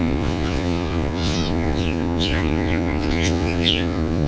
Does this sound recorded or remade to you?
remade